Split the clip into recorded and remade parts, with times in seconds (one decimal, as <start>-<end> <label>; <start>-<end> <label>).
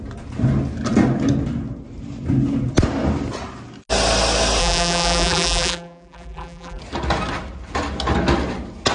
0.0-4.6 recorded; 4.6-6.8 remade; 6.8-8.9 recorded